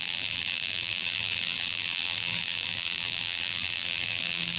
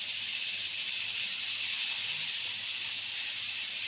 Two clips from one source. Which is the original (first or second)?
second